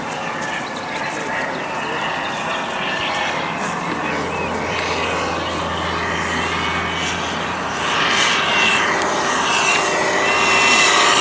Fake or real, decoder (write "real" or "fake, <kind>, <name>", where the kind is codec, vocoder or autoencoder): real